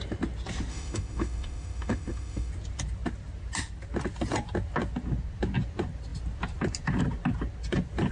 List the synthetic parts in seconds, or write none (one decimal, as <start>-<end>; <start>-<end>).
0.7-2.5